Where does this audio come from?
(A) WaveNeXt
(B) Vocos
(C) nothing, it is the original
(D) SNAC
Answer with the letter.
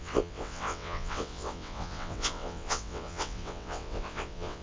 A